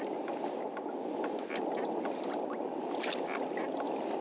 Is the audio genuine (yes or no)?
yes